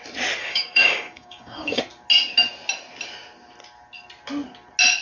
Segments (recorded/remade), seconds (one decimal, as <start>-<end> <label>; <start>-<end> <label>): 0.0-0.4 recorded; 0.4-1.8 remade; 1.8-5.0 recorded